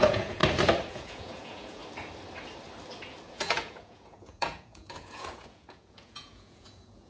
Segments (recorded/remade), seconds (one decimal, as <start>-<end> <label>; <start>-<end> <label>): 0.0-0.4 remade; 0.4-0.9 recorded; 0.9-1.8 remade; 1.8-3.3 recorded; 3.3-7.1 remade